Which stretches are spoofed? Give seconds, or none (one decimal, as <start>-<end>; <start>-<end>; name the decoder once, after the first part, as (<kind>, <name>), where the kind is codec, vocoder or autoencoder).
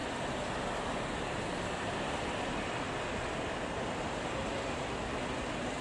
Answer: none